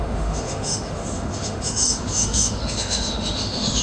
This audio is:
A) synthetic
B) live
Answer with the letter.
A